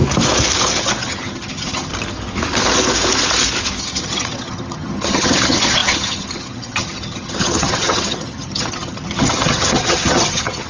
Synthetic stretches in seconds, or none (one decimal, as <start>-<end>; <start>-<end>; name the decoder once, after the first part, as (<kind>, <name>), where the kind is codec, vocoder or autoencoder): 0.8-1.9 (vocoder, HiFi-GAN); 3.8-10.7